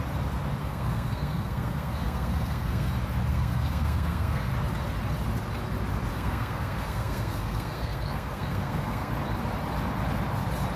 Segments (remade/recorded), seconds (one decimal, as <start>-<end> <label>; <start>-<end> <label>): 0.0-0.6 recorded; 0.6-2.9 remade; 2.9-3.3 recorded; 3.3-4.5 remade; 4.5-6.1 recorded; 6.1-9.1 remade; 9.1-10.8 recorded